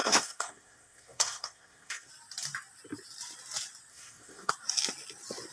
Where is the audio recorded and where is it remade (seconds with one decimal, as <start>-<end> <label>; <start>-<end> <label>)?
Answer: 0.0-2.1 remade; 2.1-3.9 recorded; 3.9-4.5 remade; 4.5-5.5 recorded